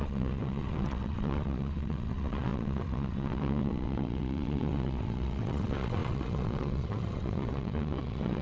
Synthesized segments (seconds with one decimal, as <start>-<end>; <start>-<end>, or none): 0.0-8.4